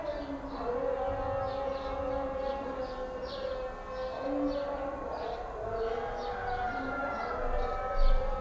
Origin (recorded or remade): recorded